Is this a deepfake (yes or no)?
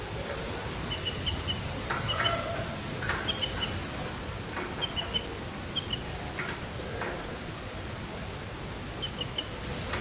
no